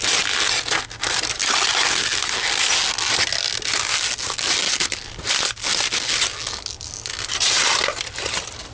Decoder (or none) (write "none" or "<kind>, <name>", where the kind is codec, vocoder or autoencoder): none